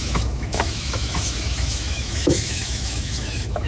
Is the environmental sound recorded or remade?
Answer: remade